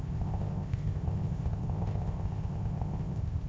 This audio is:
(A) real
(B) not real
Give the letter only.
B